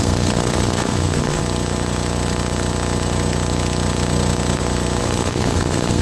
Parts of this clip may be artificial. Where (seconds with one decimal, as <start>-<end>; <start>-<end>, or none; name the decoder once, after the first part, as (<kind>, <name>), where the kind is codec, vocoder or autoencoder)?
0.0-1.4 (codec, SNAC); 5.0-6.0